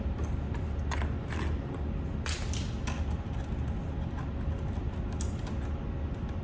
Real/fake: real